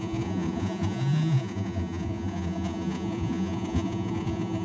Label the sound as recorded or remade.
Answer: remade